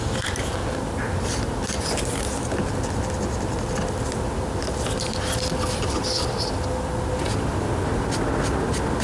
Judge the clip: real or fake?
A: real